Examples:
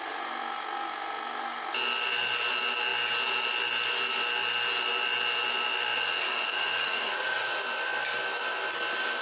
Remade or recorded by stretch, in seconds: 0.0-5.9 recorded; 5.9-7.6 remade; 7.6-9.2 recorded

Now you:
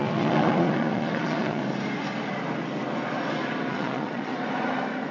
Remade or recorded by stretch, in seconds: 0.0-1.6 remade; 1.6-3.7 recorded; 3.7-4.3 remade; 4.3-5.1 recorded

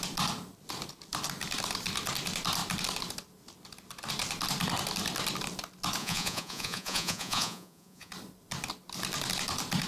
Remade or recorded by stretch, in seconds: 0.0-6.0 recorded; 6.0-8.1 remade; 8.1-9.9 recorded

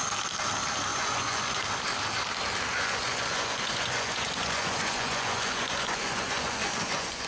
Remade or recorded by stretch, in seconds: 0.0-0.9 recorded; 0.9-1.6 remade; 1.6-2.7 recorded; 2.7-7.3 remade

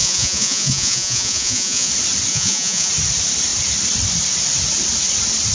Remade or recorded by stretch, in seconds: 0.0-1.9 remade; 1.9-2.3 recorded; 2.3-2.9 remade; 2.9-5.5 recorded